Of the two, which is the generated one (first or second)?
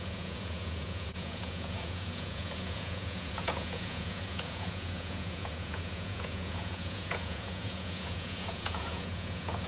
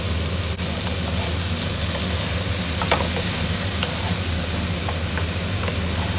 first